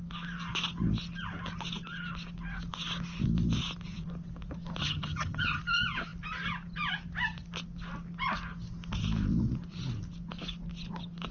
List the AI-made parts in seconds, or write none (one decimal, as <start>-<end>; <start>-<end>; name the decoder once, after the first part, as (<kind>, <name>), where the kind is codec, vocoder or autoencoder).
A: 4.8-5.6 (vocoder, HiFi-GAN)